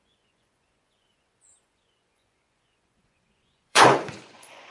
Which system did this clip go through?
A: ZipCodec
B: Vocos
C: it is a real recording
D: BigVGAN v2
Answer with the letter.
B